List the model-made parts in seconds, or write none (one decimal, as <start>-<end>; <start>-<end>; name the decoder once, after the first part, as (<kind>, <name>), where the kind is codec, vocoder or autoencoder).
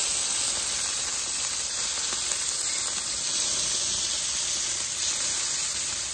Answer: none